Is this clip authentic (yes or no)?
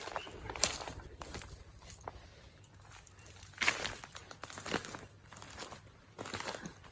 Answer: yes